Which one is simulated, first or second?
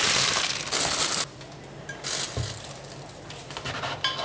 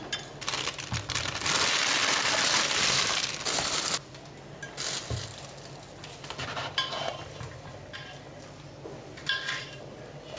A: second